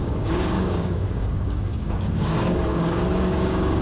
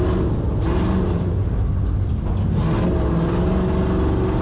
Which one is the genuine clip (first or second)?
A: second